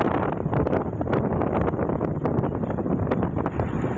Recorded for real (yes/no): yes